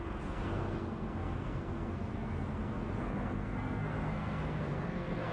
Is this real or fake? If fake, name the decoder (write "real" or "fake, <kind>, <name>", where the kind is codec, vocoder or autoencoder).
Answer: fake, codec, SNAC